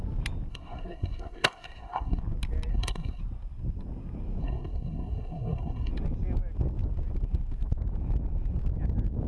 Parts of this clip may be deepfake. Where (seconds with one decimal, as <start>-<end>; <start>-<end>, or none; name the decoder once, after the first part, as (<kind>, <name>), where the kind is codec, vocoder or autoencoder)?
0.5-2.2 (codec, SNAC); 2.7-3.2; 4.4-5.9